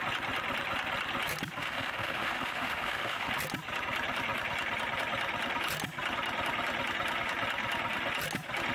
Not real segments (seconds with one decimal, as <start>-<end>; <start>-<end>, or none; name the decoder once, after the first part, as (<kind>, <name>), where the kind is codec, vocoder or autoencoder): 1.6-3.3 (autoencoder, DAC-VAE)